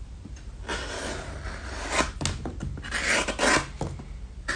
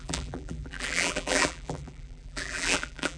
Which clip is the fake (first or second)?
second